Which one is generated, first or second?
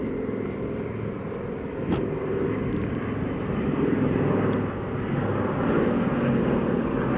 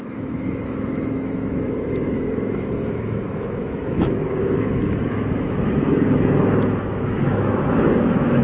second